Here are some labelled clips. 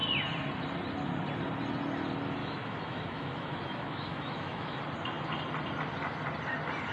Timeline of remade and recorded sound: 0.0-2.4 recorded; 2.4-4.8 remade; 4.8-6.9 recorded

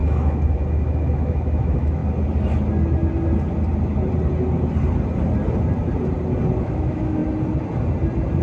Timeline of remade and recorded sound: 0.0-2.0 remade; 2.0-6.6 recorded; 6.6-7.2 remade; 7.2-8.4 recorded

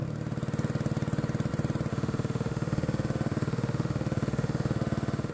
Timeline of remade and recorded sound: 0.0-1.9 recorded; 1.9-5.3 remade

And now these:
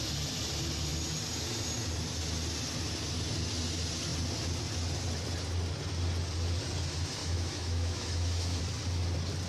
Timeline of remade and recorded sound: 0.0-7.2 recorded; 7.2-8.6 remade; 8.6-9.5 recorded

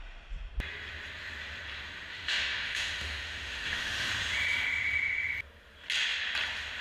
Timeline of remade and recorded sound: 0.0-2.1 recorded; 2.1-4.1 remade; 4.1-6.8 recorded